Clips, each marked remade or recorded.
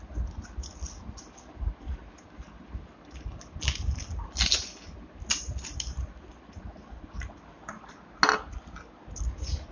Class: recorded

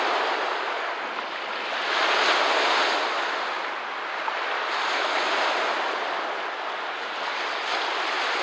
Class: recorded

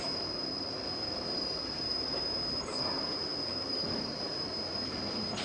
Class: remade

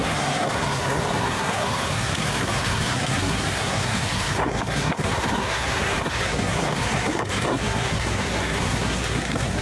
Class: remade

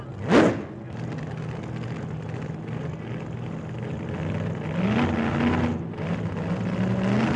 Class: recorded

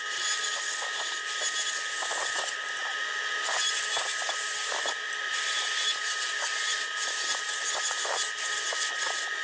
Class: recorded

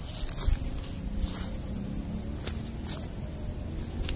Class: recorded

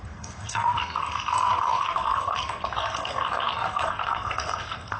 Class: remade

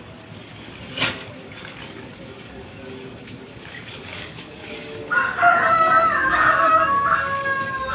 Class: remade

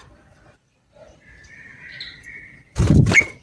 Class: remade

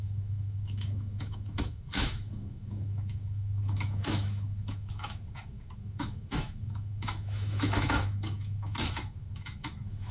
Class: remade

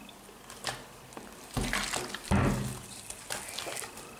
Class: recorded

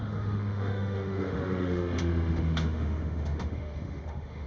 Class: remade